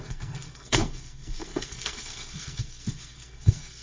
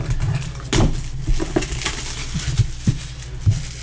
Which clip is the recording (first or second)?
second